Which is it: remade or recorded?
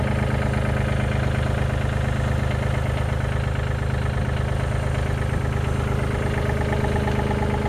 recorded